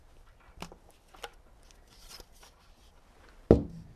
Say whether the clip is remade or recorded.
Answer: recorded